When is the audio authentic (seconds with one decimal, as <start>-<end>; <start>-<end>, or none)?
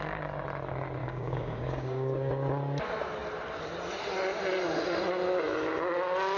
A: 0.0-1.0; 2.3-6.4